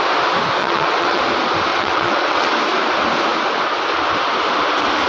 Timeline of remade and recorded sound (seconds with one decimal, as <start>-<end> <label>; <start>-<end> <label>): 0.0-0.6 recorded; 0.6-1.2 remade; 1.2-1.7 recorded; 1.7-2.5 remade; 2.5-5.1 recorded